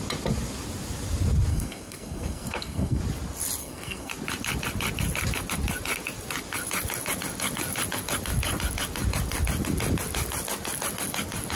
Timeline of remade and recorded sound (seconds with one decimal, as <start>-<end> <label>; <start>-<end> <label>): 0.0-1.5 recorded; 1.5-3.0 remade; 3.0-3.6 recorded; 3.6-4.1 remade; 4.1-11.6 recorded